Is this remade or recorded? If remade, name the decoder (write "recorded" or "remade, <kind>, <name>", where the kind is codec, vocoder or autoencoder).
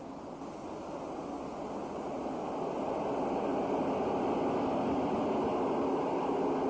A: recorded